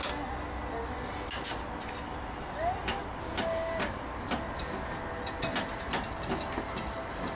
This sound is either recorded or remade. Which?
recorded